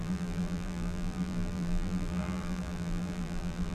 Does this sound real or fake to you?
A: fake